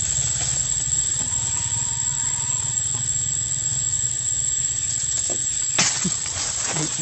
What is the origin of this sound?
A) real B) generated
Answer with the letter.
B